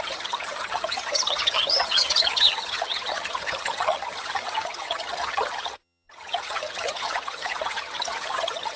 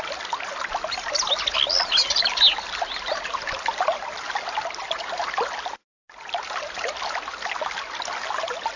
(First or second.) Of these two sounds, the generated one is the first